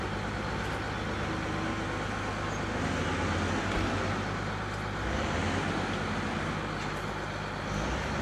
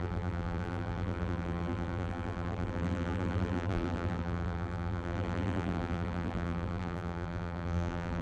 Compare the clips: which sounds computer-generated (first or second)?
second